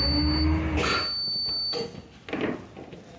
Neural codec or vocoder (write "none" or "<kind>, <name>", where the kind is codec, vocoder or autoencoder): none